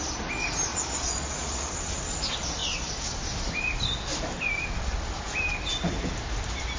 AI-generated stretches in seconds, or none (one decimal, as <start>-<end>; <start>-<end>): 0.7-1.7